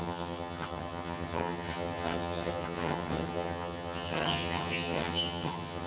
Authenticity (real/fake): fake